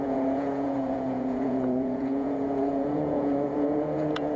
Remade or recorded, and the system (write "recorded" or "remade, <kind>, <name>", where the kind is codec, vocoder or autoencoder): remade, vocoder, Vocos